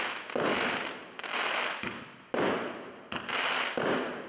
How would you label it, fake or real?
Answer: real